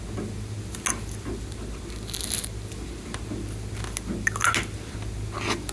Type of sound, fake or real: real